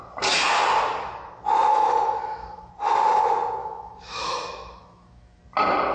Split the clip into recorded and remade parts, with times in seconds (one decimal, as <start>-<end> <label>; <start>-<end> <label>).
0.0-1.7 recorded; 1.7-2.7 remade; 2.7-3.6 recorded; 3.6-5.4 remade; 5.4-5.9 recorded